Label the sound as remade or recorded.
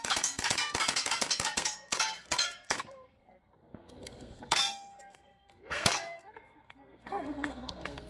remade